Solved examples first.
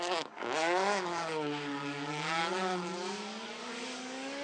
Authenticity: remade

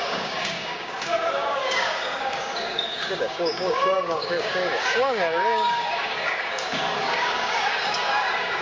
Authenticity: remade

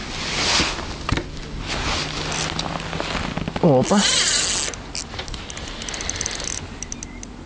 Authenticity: recorded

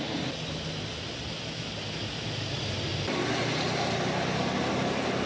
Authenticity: recorded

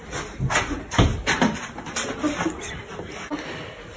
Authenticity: recorded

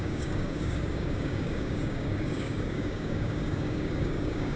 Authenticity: remade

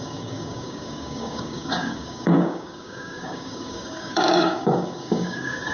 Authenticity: remade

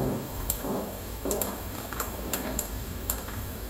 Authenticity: remade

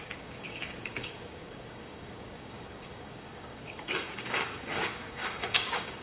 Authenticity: remade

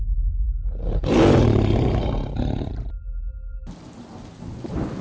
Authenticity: recorded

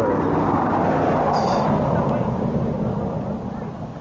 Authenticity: recorded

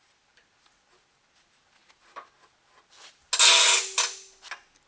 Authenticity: recorded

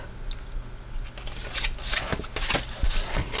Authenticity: recorded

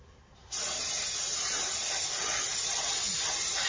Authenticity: recorded